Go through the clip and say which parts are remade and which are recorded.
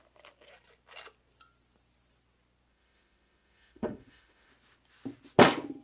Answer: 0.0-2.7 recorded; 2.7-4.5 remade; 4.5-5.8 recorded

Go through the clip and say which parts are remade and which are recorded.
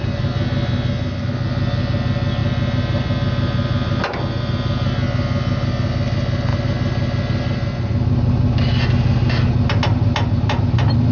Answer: 0.0-2.4 recorded; 2.4-4.4 remade; 4.4-11.1 recorded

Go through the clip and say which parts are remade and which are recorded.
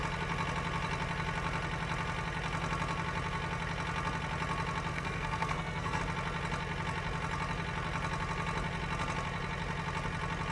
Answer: 0.0-4.9 recorded; 4.9-6.0 remade; 6.0-10.5 recorded